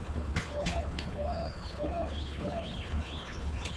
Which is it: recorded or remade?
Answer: remade